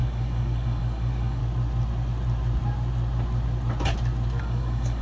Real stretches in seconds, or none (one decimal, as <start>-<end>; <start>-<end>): 1.4-4.4